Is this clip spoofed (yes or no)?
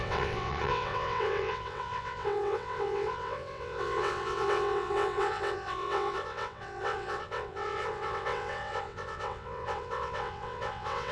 yes